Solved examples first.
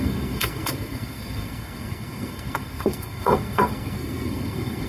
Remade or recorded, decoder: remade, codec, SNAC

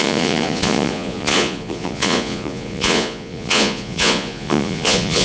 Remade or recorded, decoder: remade, vocoder, Vocos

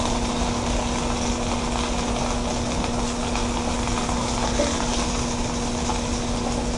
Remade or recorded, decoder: recorded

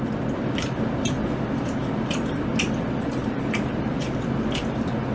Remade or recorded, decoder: recorded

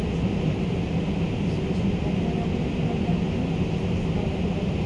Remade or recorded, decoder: recorded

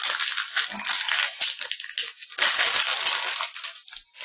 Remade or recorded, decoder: recorded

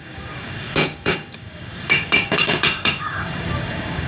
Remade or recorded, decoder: remade, codec, DAC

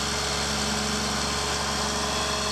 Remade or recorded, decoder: recorded